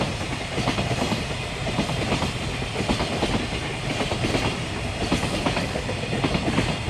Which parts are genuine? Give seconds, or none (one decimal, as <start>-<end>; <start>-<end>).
0.0-5.2; 5.9-6.9